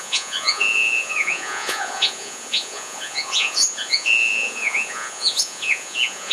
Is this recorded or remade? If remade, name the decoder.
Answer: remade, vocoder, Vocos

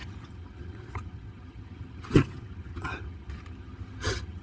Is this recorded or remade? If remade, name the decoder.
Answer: remade, vocoder, HiFi-GAN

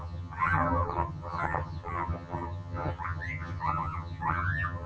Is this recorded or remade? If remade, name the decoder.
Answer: remade, vocoder, HiFi-GAN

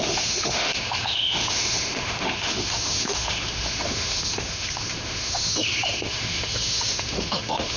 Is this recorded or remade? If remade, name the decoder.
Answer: remade, autoencoder, DAC-VAE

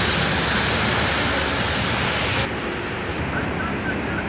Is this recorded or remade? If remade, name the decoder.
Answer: recorded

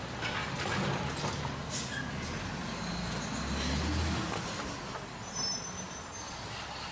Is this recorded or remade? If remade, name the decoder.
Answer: recorded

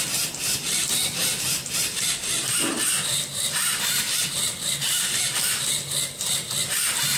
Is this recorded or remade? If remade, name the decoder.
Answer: recorded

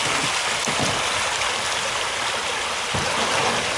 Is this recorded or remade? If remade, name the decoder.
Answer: recorded